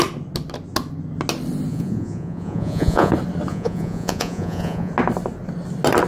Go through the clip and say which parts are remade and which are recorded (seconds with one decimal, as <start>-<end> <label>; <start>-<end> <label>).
0.0-1.7 recorded; 1.7-3.1 remade; 3.1-3.5 recorded; 3.5-4.9 remade; 4.9-6.1 recorded